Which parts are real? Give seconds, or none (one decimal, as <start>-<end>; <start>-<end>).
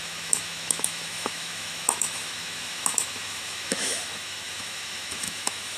none